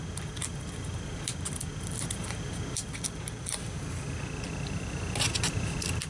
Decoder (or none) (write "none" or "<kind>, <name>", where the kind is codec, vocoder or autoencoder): none